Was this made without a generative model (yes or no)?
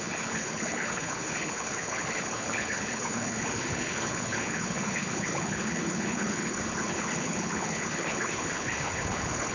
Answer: no